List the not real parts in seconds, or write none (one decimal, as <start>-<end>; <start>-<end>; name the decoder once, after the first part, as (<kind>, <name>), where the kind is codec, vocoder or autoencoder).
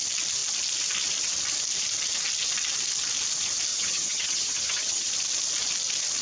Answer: 3.7-5.1 (vocoder, HiFi-GAN)